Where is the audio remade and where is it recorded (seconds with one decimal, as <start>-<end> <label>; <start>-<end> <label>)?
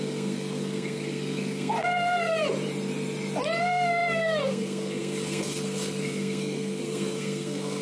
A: 0.0-2.4 remade; 2.4-3.6 recorded; 3.6-7.8 remade